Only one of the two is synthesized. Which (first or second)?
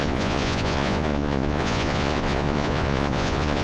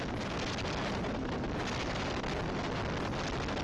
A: first